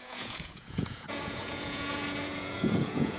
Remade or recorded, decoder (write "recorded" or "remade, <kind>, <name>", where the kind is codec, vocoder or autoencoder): remade, vocoder, Vocos